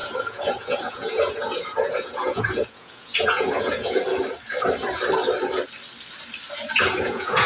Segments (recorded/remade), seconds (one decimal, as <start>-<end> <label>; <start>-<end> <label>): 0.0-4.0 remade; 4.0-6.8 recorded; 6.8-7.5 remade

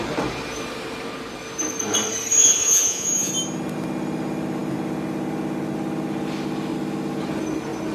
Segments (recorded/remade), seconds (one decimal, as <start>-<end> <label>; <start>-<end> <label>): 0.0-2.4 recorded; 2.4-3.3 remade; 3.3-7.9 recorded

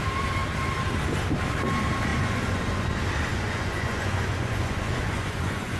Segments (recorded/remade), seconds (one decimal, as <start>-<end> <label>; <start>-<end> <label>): 0.0-2.1 recorded; 2.1-2.9 remade; 2.9-3.3 recorded; 3.3-5.8 remade